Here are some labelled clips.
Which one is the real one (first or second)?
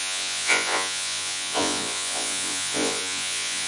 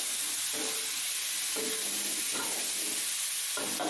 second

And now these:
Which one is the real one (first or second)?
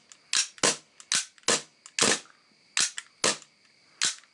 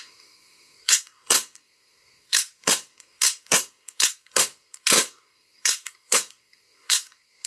first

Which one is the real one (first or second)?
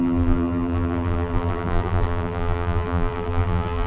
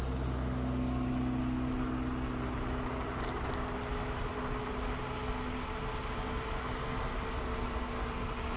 second